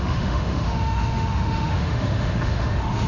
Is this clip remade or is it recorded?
remade